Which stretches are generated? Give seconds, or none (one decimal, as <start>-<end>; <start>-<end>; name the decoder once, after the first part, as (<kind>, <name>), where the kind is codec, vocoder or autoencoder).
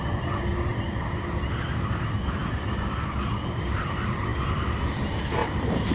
none